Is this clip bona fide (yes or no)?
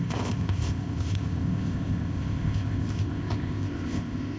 no